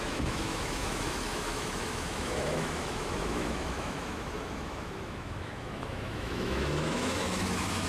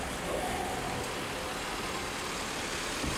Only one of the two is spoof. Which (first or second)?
first